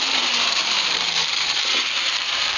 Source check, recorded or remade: remade